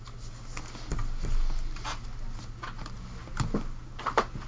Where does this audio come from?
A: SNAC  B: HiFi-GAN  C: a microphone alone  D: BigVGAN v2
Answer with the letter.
C